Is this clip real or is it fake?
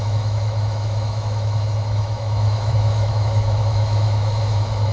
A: fake